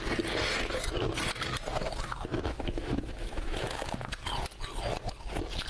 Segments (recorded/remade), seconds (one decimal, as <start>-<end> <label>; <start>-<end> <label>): 0.0-2.3 recorded; 2.3-4.1 remade; 4.1-5.7 recorded